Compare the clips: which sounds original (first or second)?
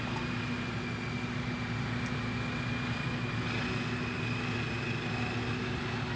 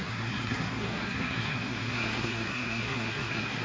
first